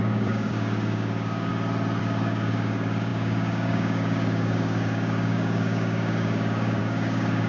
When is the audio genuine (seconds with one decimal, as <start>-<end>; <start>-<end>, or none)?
1.5-2.0